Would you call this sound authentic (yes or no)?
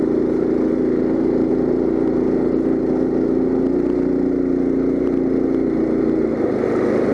yes